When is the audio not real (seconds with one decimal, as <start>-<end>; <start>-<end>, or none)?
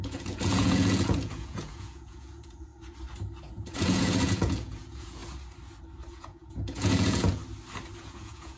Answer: 0.0-2.7; 3.5-5.2; 6.1-7.4; 7.9-8.6